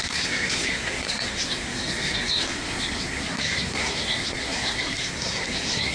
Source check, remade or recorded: remade